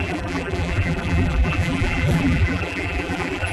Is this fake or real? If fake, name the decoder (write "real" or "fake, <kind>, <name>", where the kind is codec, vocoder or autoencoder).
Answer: fake, vocoder, BigVGAN v2